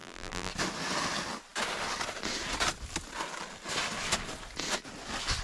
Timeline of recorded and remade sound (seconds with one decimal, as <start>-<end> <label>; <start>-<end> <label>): 0.0-0.5 remade; 0.5-5.4 recorded